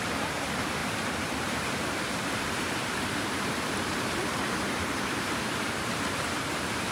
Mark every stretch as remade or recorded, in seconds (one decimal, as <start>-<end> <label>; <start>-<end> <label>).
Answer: 0.0-6.9 remade